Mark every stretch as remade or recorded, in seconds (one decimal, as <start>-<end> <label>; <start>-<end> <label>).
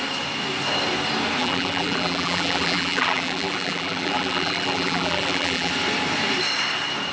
0.0-1.4 recorded; 1.4-5.7 remade; 5.7-7.1 recorded